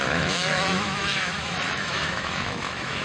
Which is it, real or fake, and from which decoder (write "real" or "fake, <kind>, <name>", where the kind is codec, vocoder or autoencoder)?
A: fake, autoencoder, DAC-VAE